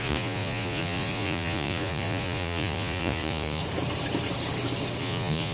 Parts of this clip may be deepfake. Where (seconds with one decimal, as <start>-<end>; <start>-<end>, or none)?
0.0-3.6; 5.0-5.5